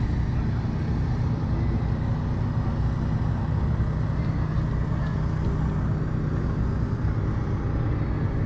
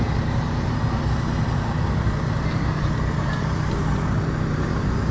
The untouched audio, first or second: first